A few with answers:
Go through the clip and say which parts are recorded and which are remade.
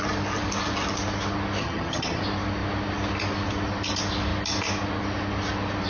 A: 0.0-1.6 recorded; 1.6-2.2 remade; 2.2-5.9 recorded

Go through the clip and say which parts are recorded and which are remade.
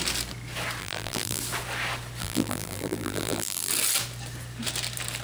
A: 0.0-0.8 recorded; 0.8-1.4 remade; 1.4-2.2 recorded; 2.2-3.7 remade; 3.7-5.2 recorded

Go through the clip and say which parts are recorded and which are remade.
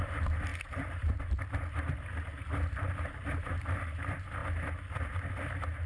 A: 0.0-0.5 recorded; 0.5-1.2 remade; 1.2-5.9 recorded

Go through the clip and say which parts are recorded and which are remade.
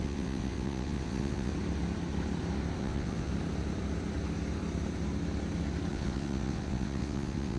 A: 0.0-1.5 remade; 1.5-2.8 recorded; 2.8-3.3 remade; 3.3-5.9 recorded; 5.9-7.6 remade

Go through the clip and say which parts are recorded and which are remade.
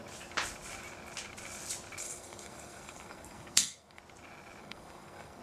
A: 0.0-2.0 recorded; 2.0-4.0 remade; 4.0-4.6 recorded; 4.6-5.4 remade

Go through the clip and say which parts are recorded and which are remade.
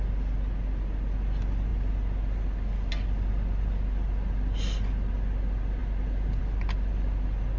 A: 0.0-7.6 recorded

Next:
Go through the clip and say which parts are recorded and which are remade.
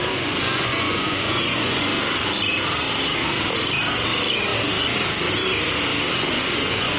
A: 0.0-1.9 remade; 1.9-6.1 recorded; 6.1-7.0 remade